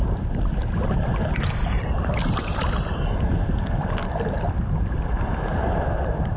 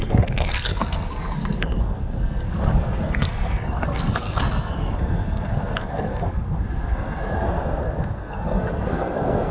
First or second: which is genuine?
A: first